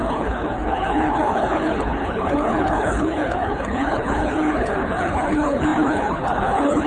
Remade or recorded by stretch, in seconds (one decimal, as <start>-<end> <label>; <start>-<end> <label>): 0.0-6.9 remade